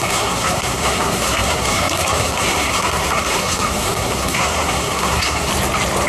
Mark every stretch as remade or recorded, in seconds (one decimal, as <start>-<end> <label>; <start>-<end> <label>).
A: 0.0-5.5 remade; 5.5-6.1 recorded